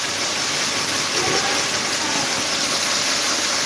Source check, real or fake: real